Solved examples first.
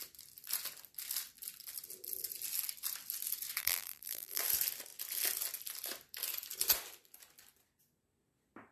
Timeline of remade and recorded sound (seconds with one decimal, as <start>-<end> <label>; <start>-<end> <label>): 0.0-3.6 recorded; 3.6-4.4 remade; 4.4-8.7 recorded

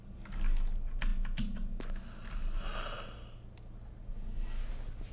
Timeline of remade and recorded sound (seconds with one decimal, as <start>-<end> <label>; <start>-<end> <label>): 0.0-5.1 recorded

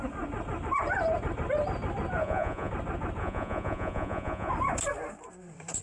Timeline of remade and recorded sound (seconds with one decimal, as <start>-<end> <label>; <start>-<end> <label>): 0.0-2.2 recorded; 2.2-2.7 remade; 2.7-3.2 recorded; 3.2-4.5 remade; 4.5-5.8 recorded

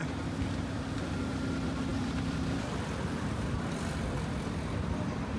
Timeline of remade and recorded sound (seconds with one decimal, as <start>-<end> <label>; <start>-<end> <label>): 0.0-1.1 remade; 1.1-1.9 recorded; 1.9-5.4 remade